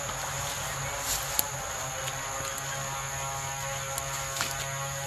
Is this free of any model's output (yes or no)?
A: yes